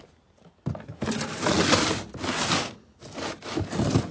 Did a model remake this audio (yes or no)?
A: no